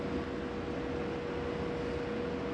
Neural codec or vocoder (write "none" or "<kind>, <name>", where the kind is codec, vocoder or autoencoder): none